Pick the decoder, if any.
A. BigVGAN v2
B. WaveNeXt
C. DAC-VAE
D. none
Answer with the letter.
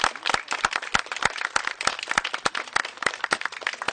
D